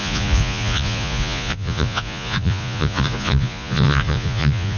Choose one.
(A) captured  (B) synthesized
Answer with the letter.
B